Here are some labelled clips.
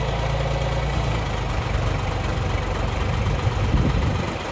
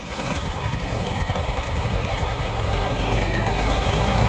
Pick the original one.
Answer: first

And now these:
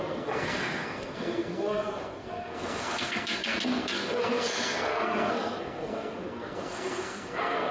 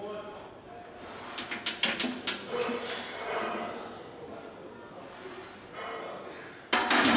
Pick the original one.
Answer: second